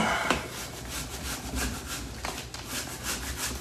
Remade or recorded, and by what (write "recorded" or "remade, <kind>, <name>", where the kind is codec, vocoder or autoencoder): recorded